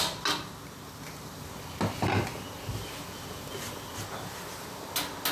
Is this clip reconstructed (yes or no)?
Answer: no